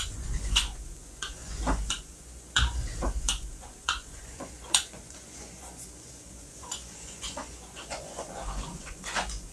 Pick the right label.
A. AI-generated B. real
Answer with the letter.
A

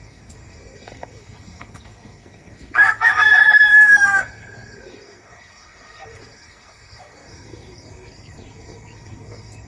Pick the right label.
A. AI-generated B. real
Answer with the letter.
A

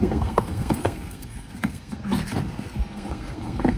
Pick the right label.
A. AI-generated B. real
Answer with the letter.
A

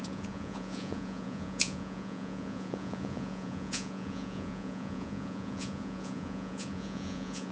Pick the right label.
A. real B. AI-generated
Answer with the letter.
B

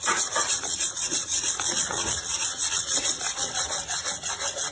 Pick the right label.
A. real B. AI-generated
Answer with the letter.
B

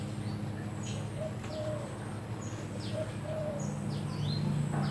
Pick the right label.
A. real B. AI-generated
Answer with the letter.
A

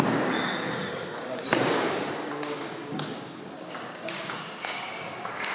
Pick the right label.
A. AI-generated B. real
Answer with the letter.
A